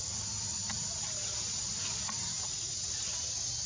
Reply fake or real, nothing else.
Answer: real